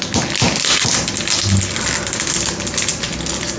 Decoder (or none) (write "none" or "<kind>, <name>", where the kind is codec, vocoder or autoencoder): none